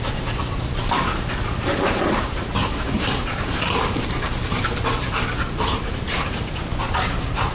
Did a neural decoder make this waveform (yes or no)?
yes